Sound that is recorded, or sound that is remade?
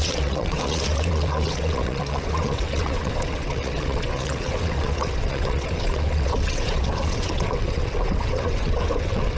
remade